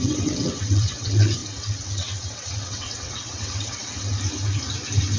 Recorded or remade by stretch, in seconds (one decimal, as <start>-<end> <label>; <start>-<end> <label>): 0.0-4.1 remade; 4.1-5.2 recorded